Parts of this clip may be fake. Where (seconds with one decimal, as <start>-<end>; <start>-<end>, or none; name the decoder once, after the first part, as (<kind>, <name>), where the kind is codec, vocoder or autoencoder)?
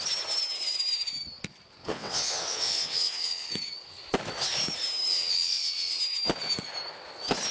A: 1.8-3.5 (vocoder, WaveNeXt); 5.1-6.0